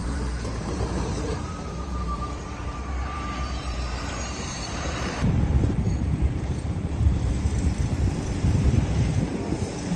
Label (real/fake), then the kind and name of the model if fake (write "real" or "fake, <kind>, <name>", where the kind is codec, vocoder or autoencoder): fake, vocoder, BigVGAN v2